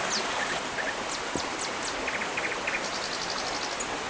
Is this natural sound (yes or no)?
yes